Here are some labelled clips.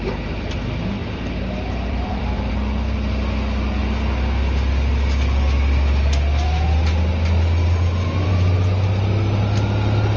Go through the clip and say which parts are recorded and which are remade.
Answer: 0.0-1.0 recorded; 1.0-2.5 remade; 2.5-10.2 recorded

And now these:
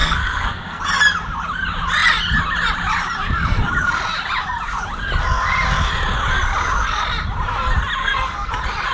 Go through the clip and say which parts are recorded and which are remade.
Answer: 0.0-0.8 remade; 0.8-8.0 recorded; 8.0-8.5 remade; 8.5-8.9 recorded

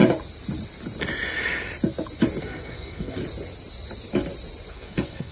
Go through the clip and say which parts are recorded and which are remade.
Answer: 0.0-2.4 recorded; 2.4-3.2 remade; 3.2-4.7 recorded; 4.7-5.3 remade

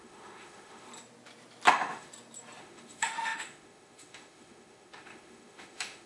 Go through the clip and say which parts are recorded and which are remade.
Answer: 0.0-0.9 remade; 0.9-1.7 recorded; 1.7-2.1 remade; 2.1-2.6 recorded; 2.6-6.1 remade